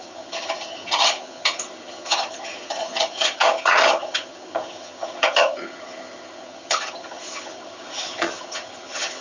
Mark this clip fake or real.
fake